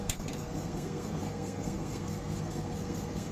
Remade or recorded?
remade